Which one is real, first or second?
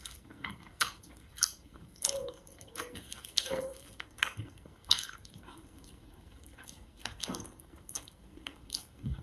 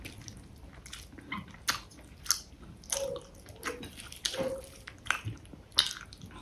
second